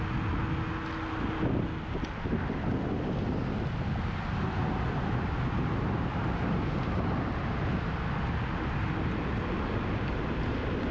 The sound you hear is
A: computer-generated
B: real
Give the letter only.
B